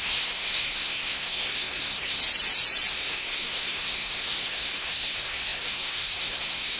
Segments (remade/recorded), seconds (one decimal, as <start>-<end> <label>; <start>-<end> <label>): 0.0-2.2 remade; 2.2-2.9 recorded; 2.9-6.8 remade